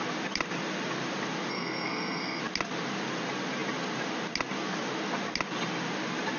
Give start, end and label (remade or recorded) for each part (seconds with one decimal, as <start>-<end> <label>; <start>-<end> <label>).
0.0-1.5 recorded; 1.5-2.4 remade; 2.4-6.4 recorded